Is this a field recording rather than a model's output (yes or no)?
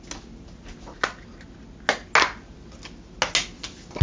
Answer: yes